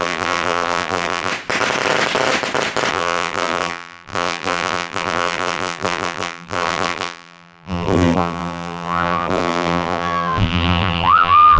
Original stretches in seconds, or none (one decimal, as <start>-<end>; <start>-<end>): 1.3-2.9